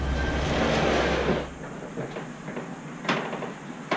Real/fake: real